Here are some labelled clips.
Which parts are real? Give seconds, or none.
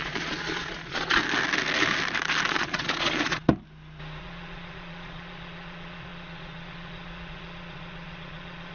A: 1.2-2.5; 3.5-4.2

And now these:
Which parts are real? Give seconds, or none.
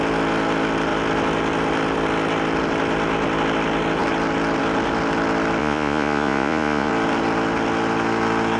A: 0.0-5.6; 6.9-8.6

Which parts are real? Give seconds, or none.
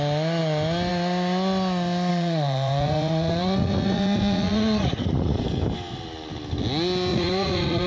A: 0.0-2.1; 5.4-7.1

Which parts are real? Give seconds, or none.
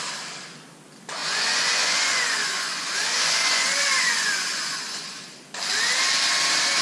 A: 0.0-1.2; 5.2-6.8